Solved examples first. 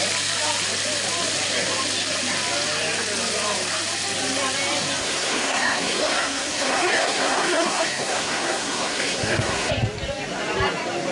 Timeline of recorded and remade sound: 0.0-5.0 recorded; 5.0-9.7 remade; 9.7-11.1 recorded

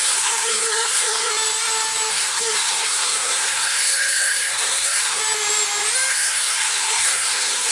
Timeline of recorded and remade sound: 0.0-1.3 remade; 1.3-2.1 recorded; 2.1-5.2 remade; 5.2-6.1 recorded; 6.1-7.7 remade

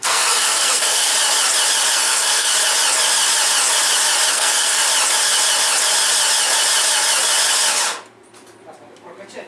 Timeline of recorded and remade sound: 0.0-1.1 remade; 1.1-1.9 recorded; 1.9-2.5 remade; 2.5-4.3 recorded; 4.3-4.8 remade; 4.8-9.5 recorded

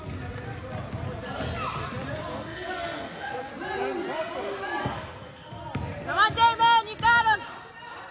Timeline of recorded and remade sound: 0.0-2.3 recorded; 2.3-3.5 remade; 3.5-4.8 recorded; 4.8-5.6 remade; 5.6-8.1 recorded

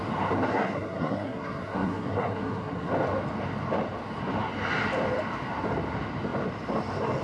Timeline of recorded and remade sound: 0.0-0.5 recorded; 0.5-2.9 remade; 2.9-7.2 recorded

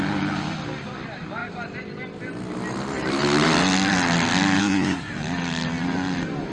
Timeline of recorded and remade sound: 0.0-4.6 recorded; 4.6-5.1 remade; 5.1-6.5 recorded

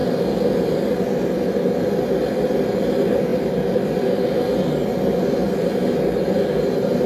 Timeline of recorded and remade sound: 0.0-7.1 recorded